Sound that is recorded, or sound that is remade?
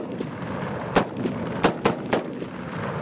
recorded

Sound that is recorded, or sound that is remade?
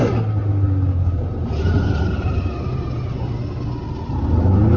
recorded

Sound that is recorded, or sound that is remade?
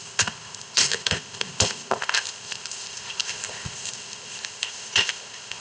remade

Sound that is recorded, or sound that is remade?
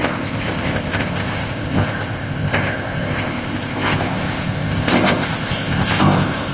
remade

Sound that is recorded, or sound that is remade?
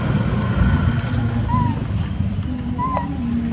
recorded